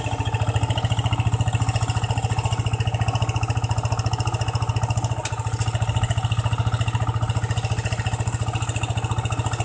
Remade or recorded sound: recorded